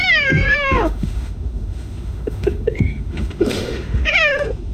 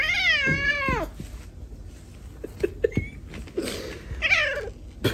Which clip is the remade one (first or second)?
first